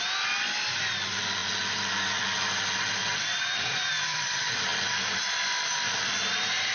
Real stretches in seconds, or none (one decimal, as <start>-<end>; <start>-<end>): 0.0-3.3; 3.9-6.7